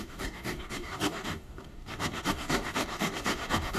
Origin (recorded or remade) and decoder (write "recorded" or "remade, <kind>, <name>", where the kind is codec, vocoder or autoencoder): remade, codec, DAC